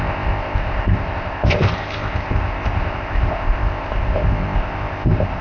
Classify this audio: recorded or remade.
remade